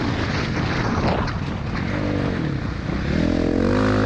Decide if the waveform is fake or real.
real